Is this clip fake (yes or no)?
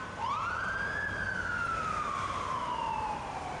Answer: yes